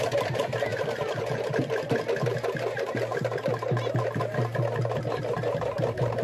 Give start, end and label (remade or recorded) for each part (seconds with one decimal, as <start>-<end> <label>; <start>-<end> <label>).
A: 0.0-0.7 recorded; 0.7-1.2 remade; 1.2-6.2 recorded